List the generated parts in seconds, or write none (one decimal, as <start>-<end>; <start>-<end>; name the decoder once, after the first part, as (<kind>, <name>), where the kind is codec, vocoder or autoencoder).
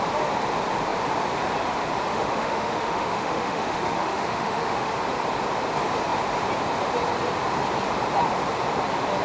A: 2.1-4.9 (autoencoder, DAC-VAE)